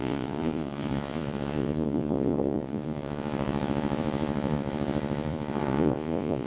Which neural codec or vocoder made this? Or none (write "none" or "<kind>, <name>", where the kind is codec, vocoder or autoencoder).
vocoder, Vocos